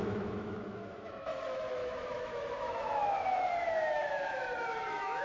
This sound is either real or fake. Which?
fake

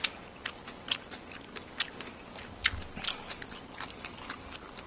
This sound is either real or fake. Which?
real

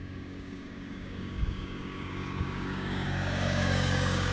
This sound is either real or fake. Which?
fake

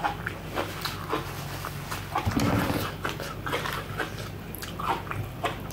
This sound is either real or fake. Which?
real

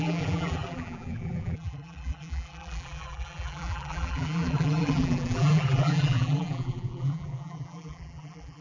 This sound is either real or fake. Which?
fake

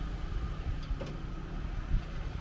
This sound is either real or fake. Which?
real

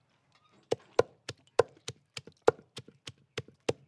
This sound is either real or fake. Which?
real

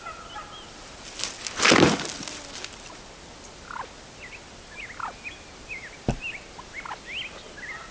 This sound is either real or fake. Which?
real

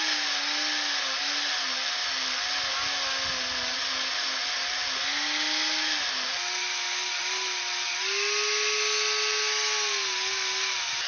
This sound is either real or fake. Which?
real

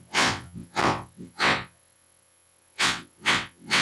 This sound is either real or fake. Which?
fake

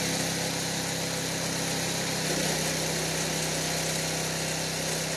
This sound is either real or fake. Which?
real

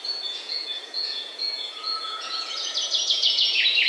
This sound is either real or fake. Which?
fake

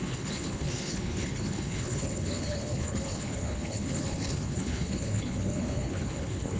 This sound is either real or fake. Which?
fake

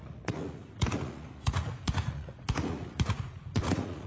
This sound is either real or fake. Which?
fake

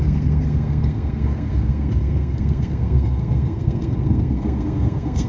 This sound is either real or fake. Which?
fake